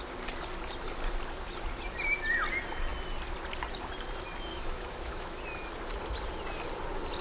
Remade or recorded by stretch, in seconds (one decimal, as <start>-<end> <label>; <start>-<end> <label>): 0.0-4.5 recorded; 4.5-5.4 remade; 5.4-7.2 recorded